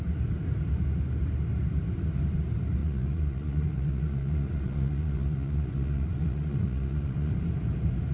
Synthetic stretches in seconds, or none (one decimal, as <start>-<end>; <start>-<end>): 2.8-7.3